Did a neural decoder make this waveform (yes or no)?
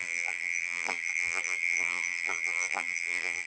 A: yes